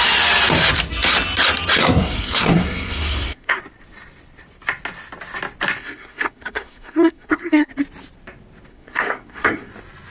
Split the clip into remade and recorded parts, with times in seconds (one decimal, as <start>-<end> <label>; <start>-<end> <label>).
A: 0.0-1.8 recorded; 1.8-3.6 remade; 3.6-5.8 recorded; 5.8-7.7 remade; 7.7-8.7 recorded; 8.7-9.7 remade; 9.7-10.1 recorded